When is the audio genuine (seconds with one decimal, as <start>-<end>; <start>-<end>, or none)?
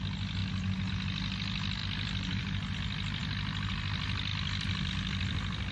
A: 0.0-1.8; 2.7-4.3; 4.9-5.7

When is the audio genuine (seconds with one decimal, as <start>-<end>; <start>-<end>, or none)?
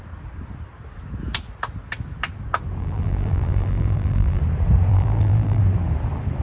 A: 0.0-2.8; 4.4-4.9; 5.6-6.4